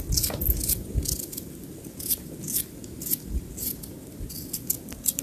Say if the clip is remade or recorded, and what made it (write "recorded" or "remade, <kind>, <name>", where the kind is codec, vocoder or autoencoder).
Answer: recorded